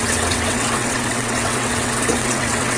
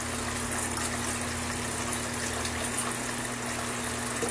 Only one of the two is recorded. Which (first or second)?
second